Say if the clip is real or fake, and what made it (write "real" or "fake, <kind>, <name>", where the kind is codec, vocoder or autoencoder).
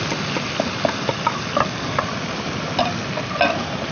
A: real